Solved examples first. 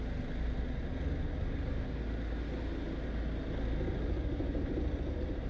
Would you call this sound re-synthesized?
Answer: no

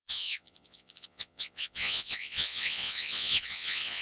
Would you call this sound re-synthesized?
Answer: yes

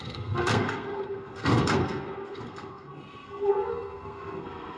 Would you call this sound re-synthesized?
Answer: yes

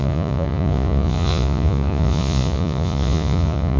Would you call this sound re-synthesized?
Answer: yes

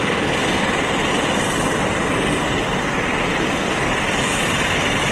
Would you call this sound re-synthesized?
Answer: no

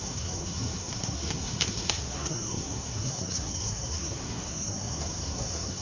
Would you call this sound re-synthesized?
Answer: yes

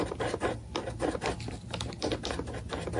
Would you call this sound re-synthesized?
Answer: no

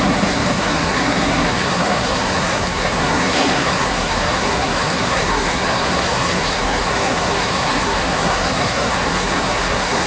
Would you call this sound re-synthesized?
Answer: yes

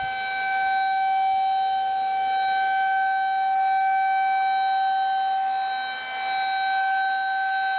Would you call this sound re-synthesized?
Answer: no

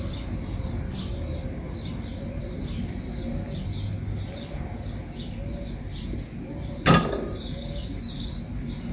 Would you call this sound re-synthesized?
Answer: no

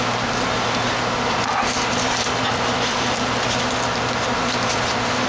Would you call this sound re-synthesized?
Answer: no